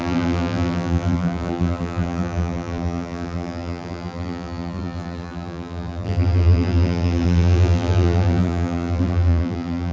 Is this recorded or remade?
remade